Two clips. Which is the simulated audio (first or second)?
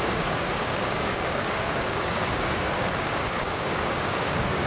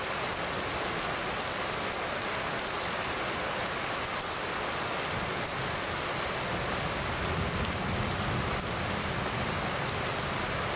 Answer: first